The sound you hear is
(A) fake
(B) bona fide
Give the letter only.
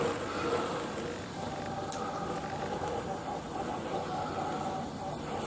B